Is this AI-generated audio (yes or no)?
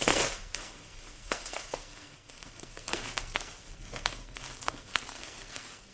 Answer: yes